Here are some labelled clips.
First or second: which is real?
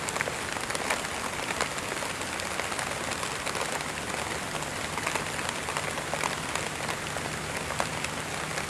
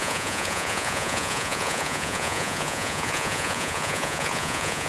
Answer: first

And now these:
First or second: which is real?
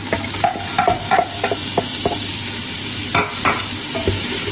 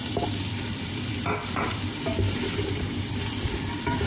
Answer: first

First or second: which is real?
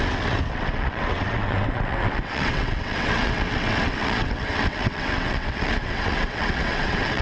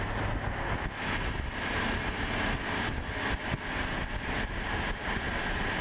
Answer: second